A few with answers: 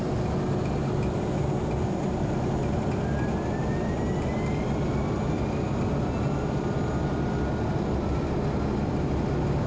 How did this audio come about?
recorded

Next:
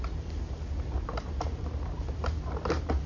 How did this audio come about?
recorded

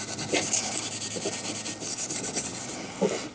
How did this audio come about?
recorded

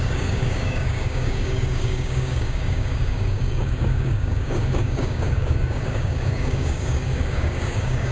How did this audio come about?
remade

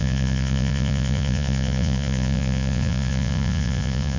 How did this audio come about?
remade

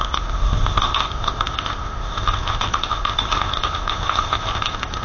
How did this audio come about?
remade